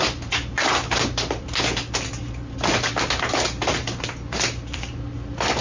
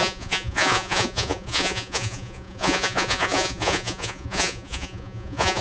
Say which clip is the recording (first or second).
first